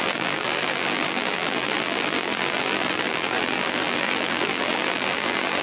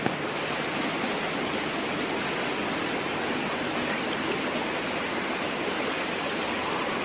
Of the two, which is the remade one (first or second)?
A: first